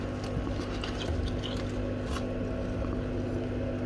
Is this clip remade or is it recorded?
recorded